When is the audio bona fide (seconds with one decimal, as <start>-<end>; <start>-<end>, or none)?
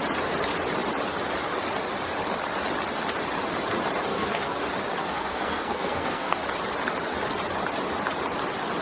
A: 0.0-4.1; 4.6-5.0; 6.4-8.8